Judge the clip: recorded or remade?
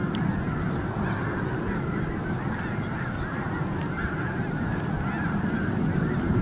recorded